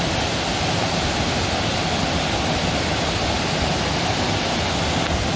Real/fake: real